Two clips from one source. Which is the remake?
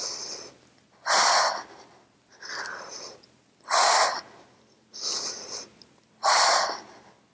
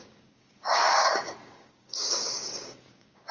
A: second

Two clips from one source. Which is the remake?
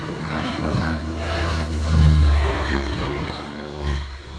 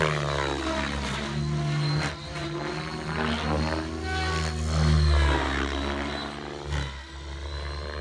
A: first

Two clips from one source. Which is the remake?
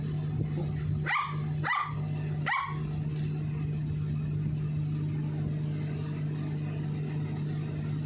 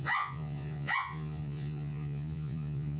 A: second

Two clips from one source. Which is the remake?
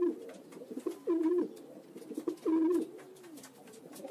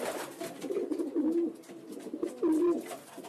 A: first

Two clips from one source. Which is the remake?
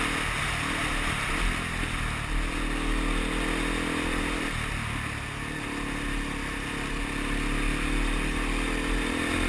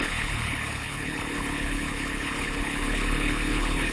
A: second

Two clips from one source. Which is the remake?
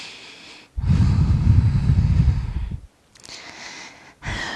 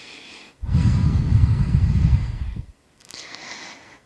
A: second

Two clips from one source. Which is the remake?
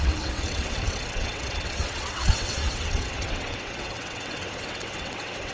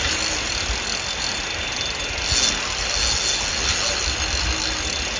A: first